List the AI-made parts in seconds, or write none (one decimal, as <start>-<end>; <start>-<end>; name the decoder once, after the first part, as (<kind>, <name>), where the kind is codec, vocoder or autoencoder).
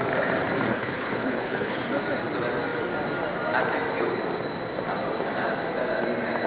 0.7-1.8 (codec, HILCodec)